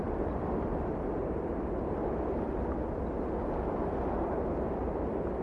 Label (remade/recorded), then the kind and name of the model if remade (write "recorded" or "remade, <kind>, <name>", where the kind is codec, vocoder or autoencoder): recorded